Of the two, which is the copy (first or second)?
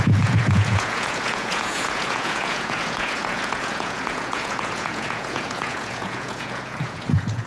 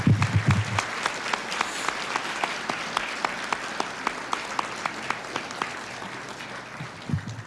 first